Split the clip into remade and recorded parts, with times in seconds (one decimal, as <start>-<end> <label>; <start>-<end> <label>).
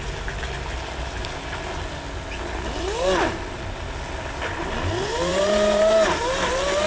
0.0-5.3 recorded; 5.3-6.5 remade; 6.5-6.9 recorded